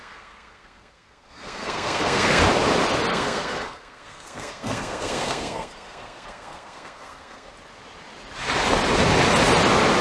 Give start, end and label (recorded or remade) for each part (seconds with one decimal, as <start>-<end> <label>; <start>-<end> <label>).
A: 0.0-2.4 remade; 2.4-3.1 recorded; 3.1-7.5 remade; 7.5-10.0 recorded